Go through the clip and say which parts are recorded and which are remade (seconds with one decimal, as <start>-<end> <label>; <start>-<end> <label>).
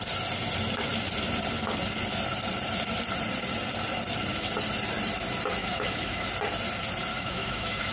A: 0.0-5.6 recorded; 5.6-6.3 remade; 6.3-7.1 recorded; 7.1-7.9 remade